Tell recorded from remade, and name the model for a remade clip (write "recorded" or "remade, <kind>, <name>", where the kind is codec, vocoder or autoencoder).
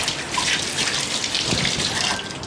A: recorded